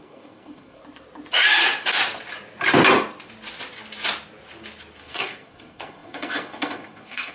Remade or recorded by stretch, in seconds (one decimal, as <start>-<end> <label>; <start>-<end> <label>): 0.0-0.8 remade; 0.8-5.0 recorded; 5.0-7.3 remade